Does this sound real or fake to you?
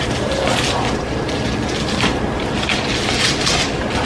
real